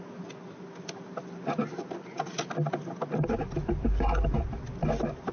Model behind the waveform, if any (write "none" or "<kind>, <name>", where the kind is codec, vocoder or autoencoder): none